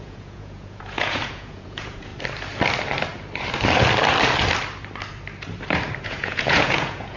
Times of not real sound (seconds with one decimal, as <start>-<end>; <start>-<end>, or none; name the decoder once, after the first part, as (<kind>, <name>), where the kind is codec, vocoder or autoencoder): 0.0-2.1 (vocoder, Vocos); 6.0-7.2